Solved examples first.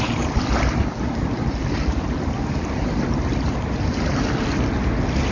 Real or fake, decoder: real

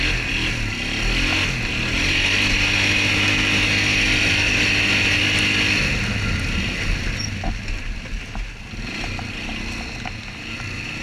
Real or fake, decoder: real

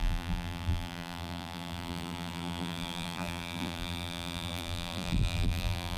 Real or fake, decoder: fake, vocoder, BigVGAN v2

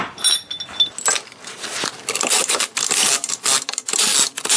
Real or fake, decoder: real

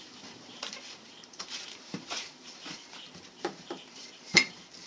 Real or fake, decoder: fake, vocoder, BigVGAN v2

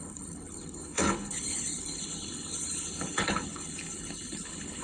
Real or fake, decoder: fake, codec, HILCodec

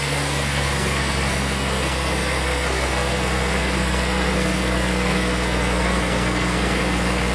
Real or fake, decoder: fake, codec, SNAC